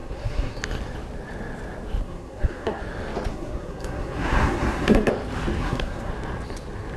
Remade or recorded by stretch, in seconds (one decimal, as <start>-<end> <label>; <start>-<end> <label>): 0.0-0.6 remade; 0.6-2.0 recorded; 2.0-2.8 remade; 2.8-3.3 recorded; 3.3-5.1 remade; 5.1-5.6 recorded; 5.6-6.1 remade; 6.1-7.0 recorded